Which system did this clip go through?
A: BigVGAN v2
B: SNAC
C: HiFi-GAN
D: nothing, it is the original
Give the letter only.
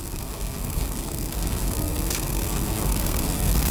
B